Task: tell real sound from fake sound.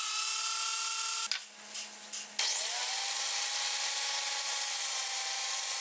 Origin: real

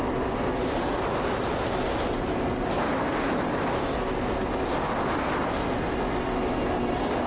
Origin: real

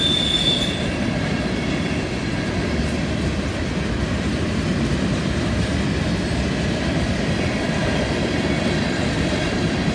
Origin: real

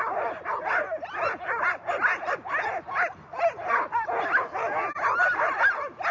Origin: real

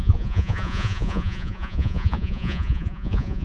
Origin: fake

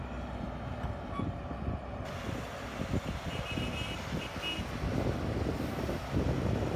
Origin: real